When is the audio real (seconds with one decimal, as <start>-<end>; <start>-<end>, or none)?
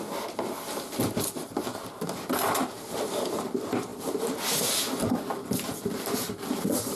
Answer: 0.0-3.9; 4.5-7.0